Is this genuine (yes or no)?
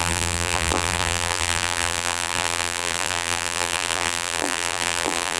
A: no